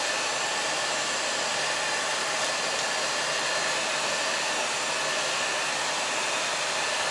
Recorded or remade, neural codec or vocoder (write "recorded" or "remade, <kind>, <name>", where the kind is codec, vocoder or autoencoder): recorded